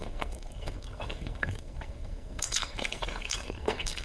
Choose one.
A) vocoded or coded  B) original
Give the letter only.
A